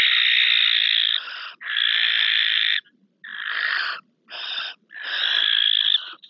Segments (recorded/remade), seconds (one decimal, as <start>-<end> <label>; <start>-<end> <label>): 0.0-6.3 recorded